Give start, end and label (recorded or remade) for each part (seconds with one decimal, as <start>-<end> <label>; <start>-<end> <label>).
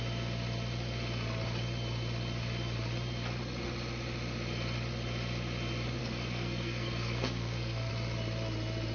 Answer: 0.0-6.0 recorded; 6.0-7.9 remade; 7.9-8.9 recorded